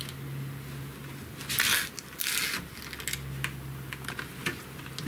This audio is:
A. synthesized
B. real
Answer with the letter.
B